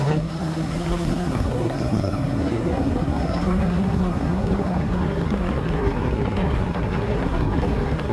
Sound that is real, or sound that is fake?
fake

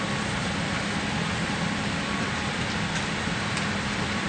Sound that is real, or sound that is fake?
fake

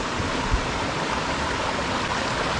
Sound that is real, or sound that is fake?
real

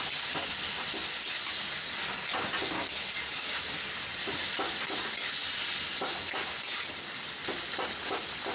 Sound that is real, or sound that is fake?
real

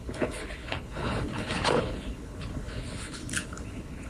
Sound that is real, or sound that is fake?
fake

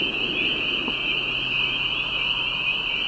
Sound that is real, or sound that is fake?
real